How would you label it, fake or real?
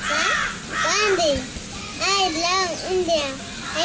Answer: real